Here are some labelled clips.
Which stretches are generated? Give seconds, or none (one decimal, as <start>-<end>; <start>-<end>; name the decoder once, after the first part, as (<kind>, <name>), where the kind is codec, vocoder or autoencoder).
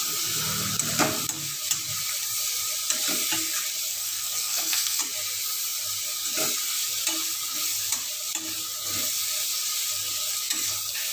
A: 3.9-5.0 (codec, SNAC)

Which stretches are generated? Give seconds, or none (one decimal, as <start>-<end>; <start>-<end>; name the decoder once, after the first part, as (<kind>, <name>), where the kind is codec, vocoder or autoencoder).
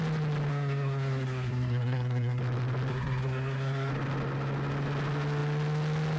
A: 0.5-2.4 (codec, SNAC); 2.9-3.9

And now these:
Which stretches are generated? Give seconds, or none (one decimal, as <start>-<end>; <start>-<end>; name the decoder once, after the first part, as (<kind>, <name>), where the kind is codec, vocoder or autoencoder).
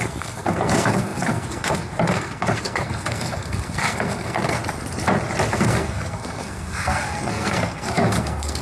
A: 0.0-4.6 (codec, SNAC); 5.5-8.6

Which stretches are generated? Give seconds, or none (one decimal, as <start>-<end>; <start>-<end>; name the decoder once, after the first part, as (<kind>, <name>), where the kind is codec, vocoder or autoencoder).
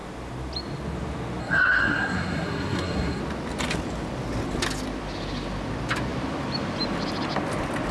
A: 1.4-3.2 (codec, SNAC)